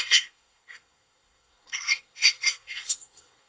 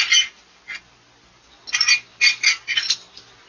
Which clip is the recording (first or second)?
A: second